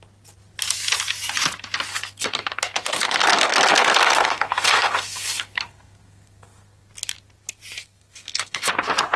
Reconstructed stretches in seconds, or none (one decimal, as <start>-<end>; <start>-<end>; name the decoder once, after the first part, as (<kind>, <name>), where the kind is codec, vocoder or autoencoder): 1.9-6.9 (codec, SNAC); 7.8-8.7

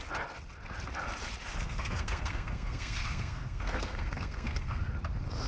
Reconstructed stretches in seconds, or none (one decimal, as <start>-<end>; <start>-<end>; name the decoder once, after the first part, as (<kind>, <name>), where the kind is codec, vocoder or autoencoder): 1.6-4.9 (codec, SNAC)